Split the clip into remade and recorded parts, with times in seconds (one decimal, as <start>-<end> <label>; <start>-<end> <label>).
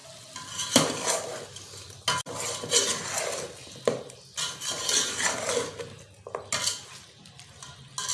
0.0-8.1 recorded